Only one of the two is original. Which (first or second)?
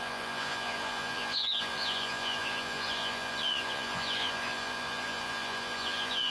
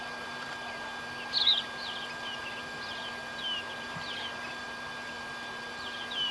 second